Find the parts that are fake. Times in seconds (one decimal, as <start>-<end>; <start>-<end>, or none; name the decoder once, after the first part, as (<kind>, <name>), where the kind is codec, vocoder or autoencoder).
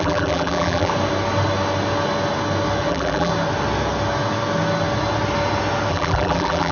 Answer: 0.0-0.9 (vocoder, BigVGAN v2); 2.9-3.3; 5.9-6.7